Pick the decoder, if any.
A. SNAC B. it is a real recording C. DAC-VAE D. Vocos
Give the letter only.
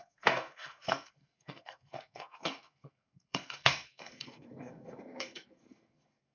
A